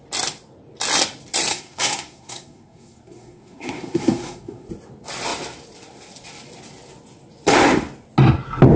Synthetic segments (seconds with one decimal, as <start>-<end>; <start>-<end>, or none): 1.5-4.7